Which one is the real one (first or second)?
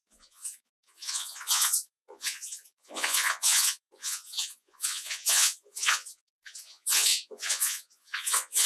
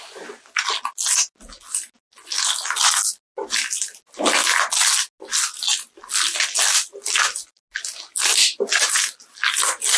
second